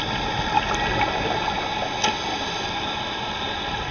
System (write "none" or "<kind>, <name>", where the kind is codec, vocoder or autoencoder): none